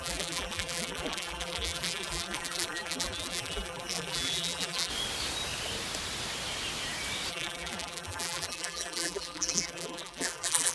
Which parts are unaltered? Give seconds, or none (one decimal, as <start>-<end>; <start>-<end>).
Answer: 4.9-7.3